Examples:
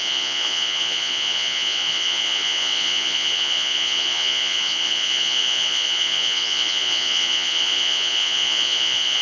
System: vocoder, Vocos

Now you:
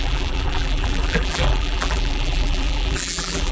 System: vocoder, BigVGAN v2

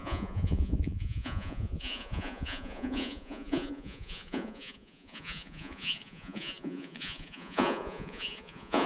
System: vocoder, Vocos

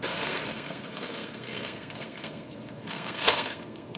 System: codec, SNAC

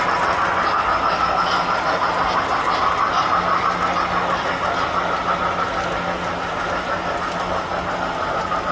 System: none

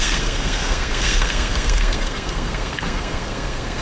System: codec, SNAC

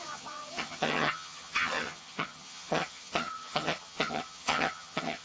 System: vocoder, HiFi-GAN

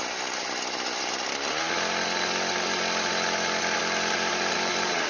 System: none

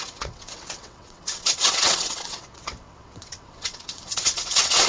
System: vocoder, WaveNeXt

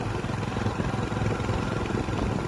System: none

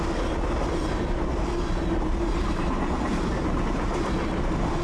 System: none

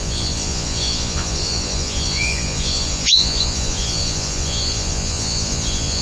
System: vocoder, Vocos